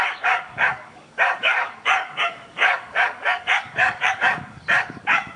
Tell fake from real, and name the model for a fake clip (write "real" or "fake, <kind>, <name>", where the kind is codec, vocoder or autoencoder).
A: fake, codec, DAC